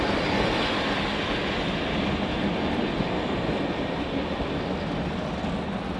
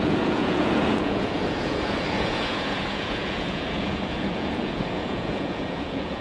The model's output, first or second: second